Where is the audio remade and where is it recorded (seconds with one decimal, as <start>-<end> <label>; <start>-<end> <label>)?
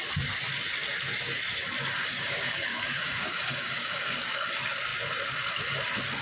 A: 0.0-1.9 recorded; 1.9-4.5 remade; 4.5-6.2 recorded